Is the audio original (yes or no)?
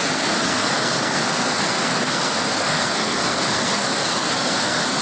no